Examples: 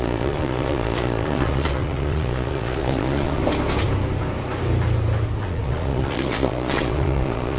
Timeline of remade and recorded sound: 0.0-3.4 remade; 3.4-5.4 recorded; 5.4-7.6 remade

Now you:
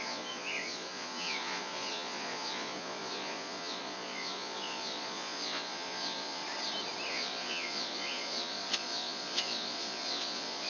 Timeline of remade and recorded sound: 0.0-6.4 remade; 6.4-7.1 recorded; 7.1-10.7 remade

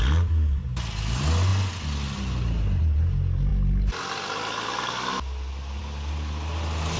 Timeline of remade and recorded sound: 0.0-7.0 recorded

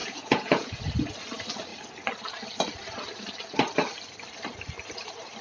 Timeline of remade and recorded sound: 0.0-0.8 remade; 0.8-5.4 recorded

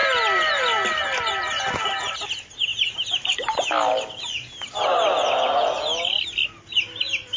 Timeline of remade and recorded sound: 0.0-7.4 recorded

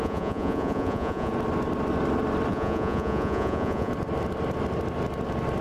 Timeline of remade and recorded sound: 0.0-1.3 remade; 1.3-2.5 recorded; 2.5-3.9 remade; 3.9-5.6 recorded

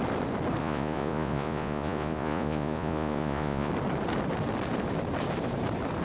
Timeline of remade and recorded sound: 0.0-0.6 recorded; 0.6-3.7 remade; 3.7-6.0 recorded

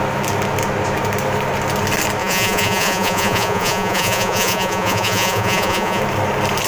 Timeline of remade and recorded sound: 0.0-2.2 recorded; 2.2-6.0 remade; 6.0-6.7 recorded